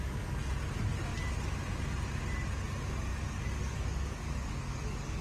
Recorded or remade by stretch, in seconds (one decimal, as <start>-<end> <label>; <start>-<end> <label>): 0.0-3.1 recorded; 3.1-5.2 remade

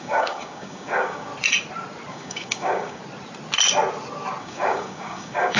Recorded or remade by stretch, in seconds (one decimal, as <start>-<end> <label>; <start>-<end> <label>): 0.0-1.3 remade; 1.3-2.1 recorded; 2.1-3.0 remade; 3.0-4.4 recorded; 4.4-5.6 remade

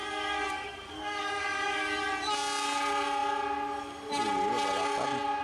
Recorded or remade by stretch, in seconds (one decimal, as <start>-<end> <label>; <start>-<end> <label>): 0.0-1.9 remade; 1.9-5.4 recorded

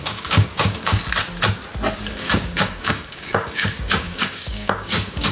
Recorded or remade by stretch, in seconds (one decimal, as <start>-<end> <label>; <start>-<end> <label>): 0.0-1.0 remade; 1.0-2.1 recorded; 2.1-5.3 remade